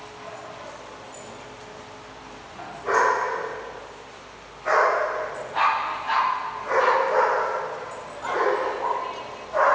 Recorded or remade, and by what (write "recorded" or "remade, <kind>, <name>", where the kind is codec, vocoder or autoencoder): recorded